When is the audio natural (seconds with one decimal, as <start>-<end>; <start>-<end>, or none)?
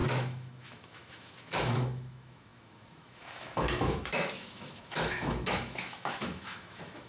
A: none